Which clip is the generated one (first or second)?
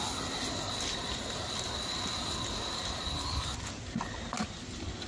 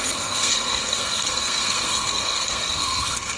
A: second